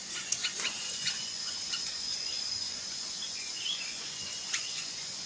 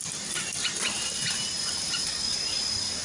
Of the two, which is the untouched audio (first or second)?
second